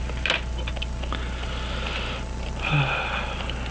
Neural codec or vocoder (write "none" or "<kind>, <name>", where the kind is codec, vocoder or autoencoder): none